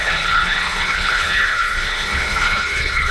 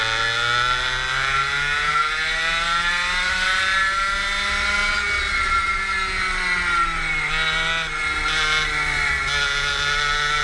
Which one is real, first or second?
second